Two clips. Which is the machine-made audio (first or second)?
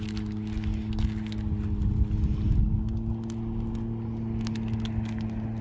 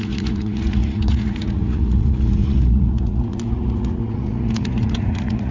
second